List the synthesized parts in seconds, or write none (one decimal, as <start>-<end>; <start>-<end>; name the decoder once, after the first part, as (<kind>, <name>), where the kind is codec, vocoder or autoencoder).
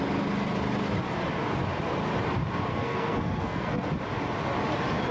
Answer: 2.7-3.9 (codec, SNAC)